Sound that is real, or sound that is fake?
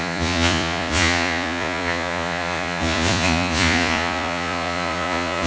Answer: fake